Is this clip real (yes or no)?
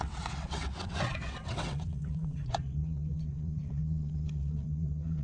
no